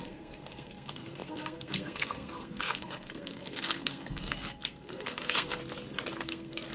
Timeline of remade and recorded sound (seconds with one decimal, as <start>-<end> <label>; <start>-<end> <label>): 0.0-5.6 remade; 5.6-6.2 recorded; 6.2-6.7 remade